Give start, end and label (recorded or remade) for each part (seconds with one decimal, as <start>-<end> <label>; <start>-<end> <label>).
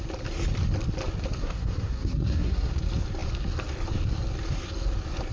0.0-1.4 recorded; 1.4-2.7 remade; 2.7-5.3 recorded